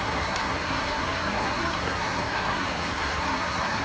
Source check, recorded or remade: remade